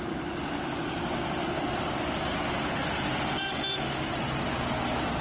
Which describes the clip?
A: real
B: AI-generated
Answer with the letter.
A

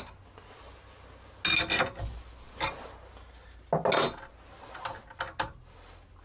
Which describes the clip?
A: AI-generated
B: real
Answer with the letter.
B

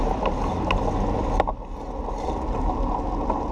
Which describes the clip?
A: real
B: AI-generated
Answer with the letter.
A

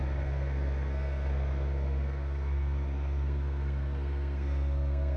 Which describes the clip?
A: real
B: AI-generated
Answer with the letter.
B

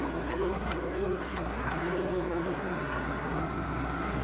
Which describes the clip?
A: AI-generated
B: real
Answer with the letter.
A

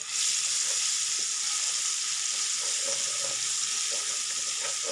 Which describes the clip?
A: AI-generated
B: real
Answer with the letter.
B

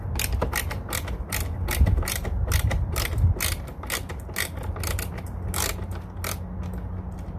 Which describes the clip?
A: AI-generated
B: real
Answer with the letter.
B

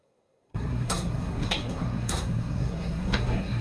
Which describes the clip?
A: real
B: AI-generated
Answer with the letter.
B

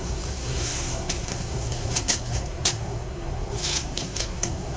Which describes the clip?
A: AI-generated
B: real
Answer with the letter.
A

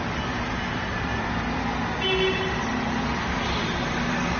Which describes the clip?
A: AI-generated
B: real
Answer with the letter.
B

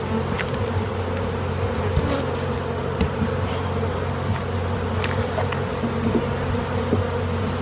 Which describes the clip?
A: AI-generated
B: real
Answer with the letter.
B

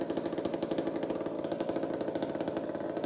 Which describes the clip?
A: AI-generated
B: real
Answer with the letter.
B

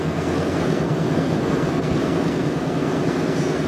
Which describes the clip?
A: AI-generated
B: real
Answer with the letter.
A